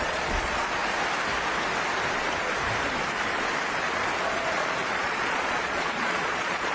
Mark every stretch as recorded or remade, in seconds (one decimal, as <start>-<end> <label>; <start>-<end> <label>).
0.0-0.8 remade; 0.8-4.2 recorded; 4.2-6.7 remade